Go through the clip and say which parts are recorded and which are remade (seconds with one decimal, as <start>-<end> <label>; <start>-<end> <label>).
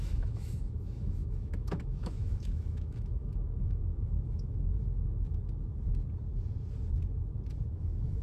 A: 0.0-5.4 remade; 5.4-7.7 recorded; 7.7-8.2 remade